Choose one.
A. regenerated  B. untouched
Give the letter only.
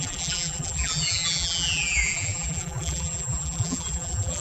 A